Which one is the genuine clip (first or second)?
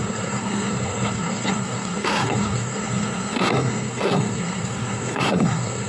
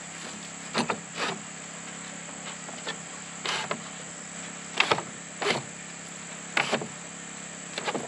second